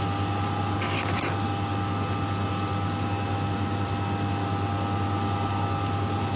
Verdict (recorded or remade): recorded